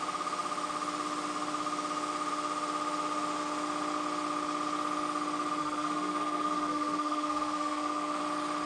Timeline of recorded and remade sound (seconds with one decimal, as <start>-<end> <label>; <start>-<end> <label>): 0.0-5.6 recorded; 5.6-8.2 remade; 8.2-8.7 recorded